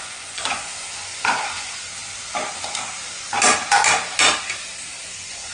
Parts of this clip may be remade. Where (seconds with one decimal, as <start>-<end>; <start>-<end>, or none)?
0.0-2.0; 5.0-5.5